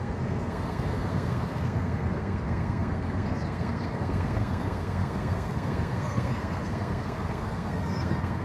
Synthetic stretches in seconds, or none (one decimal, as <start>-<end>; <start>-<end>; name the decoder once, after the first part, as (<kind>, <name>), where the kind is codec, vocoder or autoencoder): 0.0-8.4 (codec, SNAC)